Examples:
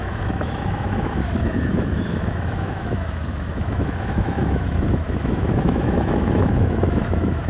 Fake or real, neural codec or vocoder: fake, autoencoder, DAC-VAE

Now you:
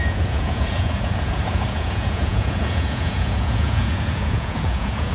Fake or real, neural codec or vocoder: fake, vocoder, Vocos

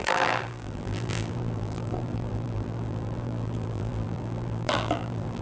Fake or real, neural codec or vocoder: fake, vocoder, BigVGAN v2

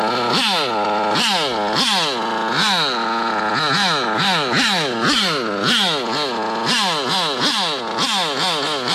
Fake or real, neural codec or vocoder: real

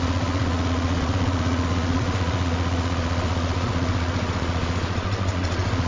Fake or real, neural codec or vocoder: fake, vocoder, Vocos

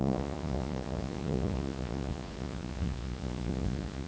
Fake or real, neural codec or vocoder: fake, vocoder, Vocos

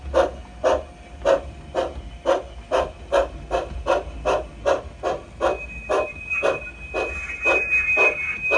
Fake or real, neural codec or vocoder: real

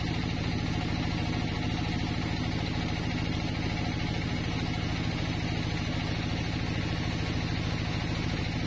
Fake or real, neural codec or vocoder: real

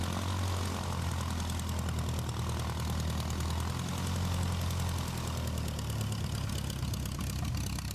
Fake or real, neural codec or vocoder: real